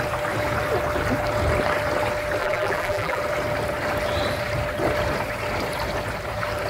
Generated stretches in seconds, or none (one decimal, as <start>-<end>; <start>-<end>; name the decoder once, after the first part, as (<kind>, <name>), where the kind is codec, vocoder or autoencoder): 2.4-3.2 (vocoder, BigVGAN v2)